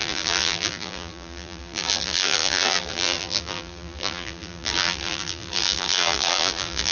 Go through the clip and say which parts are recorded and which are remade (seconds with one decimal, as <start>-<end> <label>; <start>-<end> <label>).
0.0-6.9 remade